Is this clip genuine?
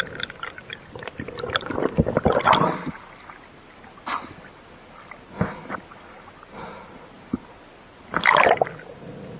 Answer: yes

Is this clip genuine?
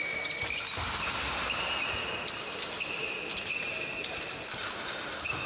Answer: yes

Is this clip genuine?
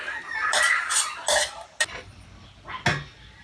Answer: yes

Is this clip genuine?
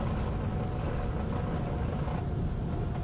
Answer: yes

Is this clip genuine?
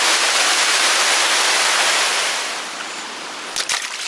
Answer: yes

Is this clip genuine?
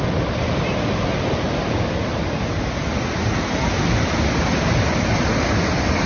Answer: yes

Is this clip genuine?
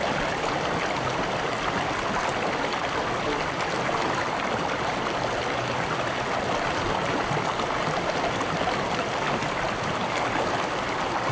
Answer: yes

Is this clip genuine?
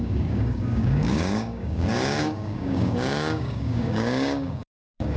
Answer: no